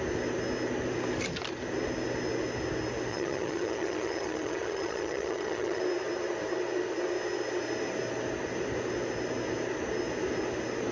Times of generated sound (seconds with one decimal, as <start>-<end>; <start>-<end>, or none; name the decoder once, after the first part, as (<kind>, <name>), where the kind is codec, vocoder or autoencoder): 3.1-5.8 (vocoder, HiFi-GAN)